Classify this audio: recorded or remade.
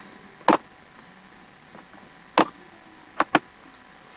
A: recorded